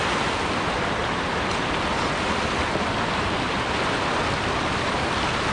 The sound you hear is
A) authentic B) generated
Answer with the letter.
A